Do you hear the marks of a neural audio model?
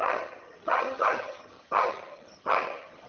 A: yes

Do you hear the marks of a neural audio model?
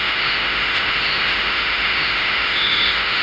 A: yes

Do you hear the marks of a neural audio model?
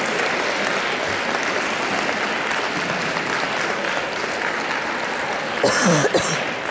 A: no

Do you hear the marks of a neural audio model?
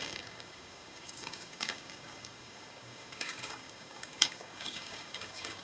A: yes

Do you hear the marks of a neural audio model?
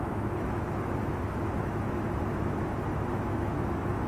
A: yes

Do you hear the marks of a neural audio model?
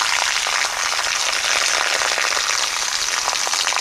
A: no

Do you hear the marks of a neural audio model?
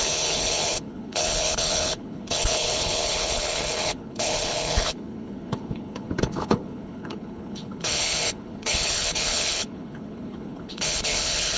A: yes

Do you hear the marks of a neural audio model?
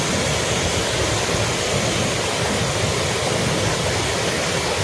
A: no